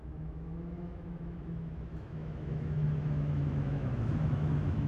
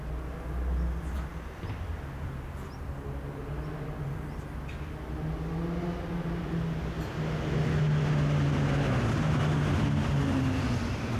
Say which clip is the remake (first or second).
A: first